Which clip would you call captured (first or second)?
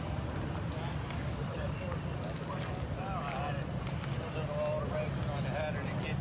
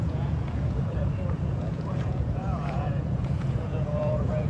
first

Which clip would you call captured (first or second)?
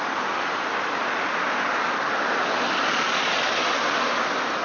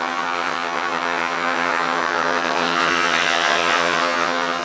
first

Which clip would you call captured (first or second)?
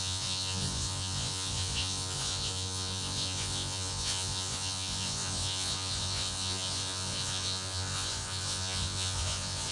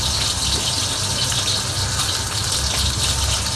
second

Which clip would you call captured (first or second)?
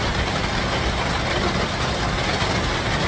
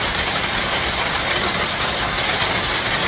first